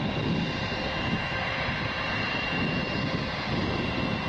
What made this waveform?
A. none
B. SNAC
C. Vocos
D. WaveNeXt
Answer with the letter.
A